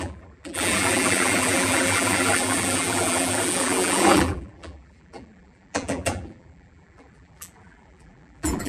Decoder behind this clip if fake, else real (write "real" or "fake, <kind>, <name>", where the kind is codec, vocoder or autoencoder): fake, vocoder, BigVGAN v2